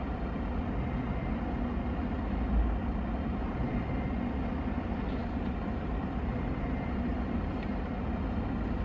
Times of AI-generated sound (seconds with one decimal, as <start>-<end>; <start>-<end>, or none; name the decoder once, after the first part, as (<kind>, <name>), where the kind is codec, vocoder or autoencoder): 3.4-3.9 (vocoder, BigVGAN v2); 5.2-7.9